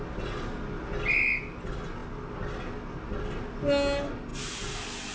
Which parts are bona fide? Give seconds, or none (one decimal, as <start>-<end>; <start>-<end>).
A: 0.0-5.1